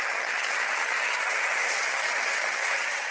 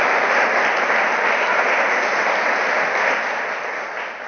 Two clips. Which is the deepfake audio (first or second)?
first